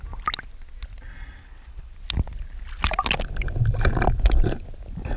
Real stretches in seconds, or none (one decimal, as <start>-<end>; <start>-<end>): 0.0-1.4; 1.9-5.2